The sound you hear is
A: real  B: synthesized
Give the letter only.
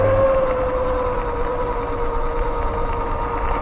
A